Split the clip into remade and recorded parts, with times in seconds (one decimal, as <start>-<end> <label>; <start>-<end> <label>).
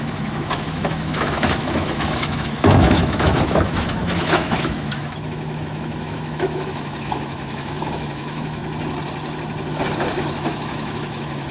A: 0.0-8.6 remade; 8.6-10.4 recorded; 10.4-11.5 remade